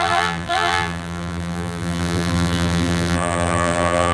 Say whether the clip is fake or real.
fake